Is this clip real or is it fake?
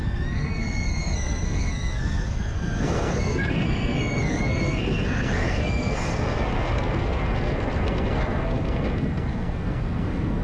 fake